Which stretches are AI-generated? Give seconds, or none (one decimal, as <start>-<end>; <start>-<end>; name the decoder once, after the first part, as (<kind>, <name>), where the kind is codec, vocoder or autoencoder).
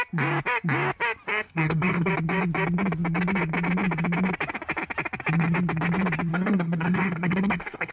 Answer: 1.3-2.1 (codec, SNAC); 6.3-7.9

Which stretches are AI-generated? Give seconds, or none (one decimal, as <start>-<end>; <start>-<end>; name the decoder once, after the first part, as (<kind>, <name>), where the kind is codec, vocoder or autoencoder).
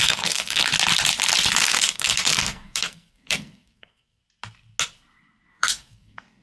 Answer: 0.0-0.6 (codec, SNAC); 1.6-4.2; 5.5-6.4